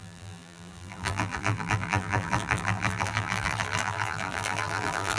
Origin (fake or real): fake